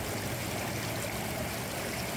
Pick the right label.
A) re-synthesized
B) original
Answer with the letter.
B